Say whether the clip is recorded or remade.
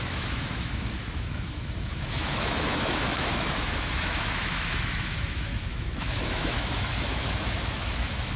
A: remade